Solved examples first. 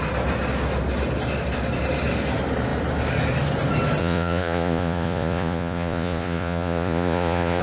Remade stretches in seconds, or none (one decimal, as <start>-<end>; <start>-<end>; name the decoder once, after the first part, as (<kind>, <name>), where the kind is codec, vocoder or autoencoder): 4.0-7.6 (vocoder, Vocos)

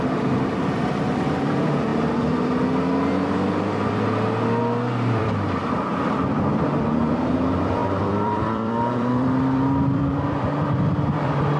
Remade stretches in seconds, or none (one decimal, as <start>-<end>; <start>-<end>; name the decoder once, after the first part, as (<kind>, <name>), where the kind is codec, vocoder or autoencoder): 0.0-1.9 (vocoder, BigVGAN v2); 4.6-5.6; 7.1-11.6

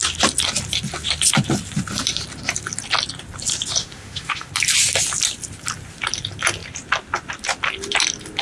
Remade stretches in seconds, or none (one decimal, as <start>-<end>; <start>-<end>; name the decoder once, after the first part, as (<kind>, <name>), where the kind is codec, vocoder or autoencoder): 3.8-4.5 (autoencoder, DAC-VAE)

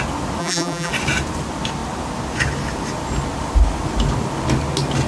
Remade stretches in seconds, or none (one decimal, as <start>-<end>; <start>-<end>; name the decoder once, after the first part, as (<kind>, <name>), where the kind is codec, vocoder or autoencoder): 0.4-0.9 (vocoder, BigVGAN v2)